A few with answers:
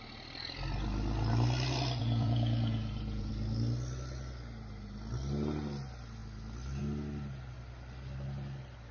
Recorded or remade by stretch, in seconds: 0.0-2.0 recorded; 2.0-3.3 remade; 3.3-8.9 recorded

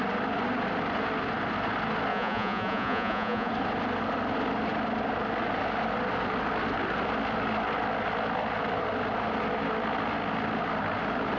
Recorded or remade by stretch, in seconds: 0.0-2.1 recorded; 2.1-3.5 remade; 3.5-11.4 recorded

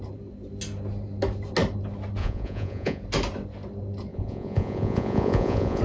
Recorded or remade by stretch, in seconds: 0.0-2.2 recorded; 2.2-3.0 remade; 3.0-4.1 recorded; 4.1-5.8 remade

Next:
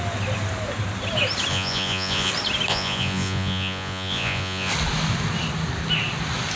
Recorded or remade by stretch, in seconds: 0.0-1.5 recorded; 1.5-2.3 remade; 2.3-2.7 recorded; 2.7-4.7 remade; 4.7-6.6 recorded

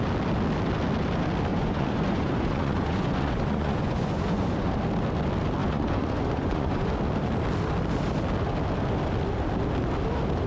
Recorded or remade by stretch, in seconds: 0.0-1.5 recorded; 1.5-4.7 remade; 4.7-5.6 recorded; 5.6-6.9 remade; 6.9-10.5 recorded